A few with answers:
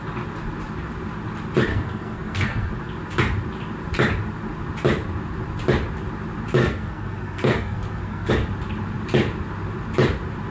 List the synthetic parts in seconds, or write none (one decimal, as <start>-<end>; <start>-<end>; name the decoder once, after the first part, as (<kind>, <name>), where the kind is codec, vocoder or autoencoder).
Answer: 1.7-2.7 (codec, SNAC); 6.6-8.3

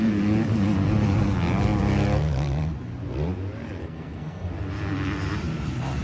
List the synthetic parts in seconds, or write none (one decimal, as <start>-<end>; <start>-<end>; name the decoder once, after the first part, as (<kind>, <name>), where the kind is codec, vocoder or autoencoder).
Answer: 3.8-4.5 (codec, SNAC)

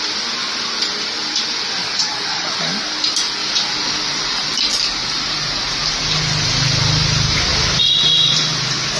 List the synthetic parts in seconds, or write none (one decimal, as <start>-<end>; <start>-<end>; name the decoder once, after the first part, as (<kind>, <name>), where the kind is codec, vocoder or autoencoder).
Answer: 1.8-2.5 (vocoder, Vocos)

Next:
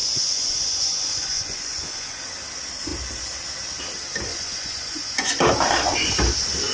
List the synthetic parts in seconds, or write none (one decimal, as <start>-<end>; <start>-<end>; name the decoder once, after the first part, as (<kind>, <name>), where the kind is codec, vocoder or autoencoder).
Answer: 0.0-2.2 (vocoder, Vocos); 4.3-5.3

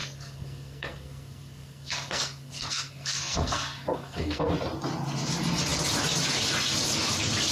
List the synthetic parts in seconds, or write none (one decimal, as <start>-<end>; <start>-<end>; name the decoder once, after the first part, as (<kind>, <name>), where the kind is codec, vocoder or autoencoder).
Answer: 0.0-4.5 (codec, SNAC)

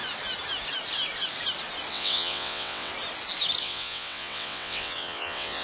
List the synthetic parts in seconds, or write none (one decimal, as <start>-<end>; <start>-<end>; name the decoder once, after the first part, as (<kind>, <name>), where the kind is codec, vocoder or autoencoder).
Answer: 1.9-2.9 (vocoder, WaveNeXt); 3.6-5.6

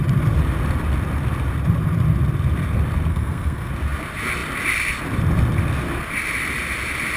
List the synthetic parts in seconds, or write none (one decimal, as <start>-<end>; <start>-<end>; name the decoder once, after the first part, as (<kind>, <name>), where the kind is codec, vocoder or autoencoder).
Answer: 3.1-3.7 (codec, SNAC)

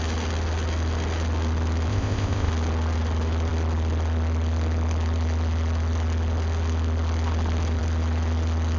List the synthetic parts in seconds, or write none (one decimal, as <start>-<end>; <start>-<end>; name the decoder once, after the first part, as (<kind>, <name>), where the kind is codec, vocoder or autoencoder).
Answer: 1.9-2.5 (codec, ZipCodec)